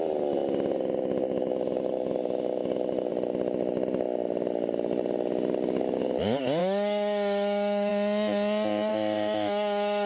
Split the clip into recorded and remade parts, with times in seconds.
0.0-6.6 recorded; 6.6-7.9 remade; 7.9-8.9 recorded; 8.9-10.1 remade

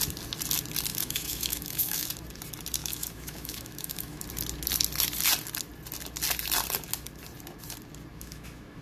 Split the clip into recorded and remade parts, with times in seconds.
0.0-0.9 recorded; 0.9-2.1 remade; 2.1-2.8 recorded; 2.8-4.2 remade; 4.2-8.1 recorded; 8.1-8.8 remade

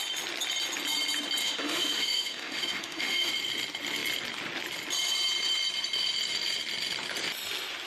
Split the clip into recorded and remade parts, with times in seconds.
0.0-1.4 recorded; 1.4-3.3 remade; 3.3-7.9 recorded